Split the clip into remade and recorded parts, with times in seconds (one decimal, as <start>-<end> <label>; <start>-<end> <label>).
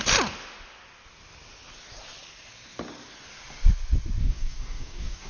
0.0-4.2 recorded; 4.2-5.3 remade